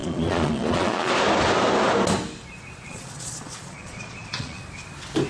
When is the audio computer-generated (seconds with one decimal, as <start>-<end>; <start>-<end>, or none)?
0.0-1.1; 2.9-4.6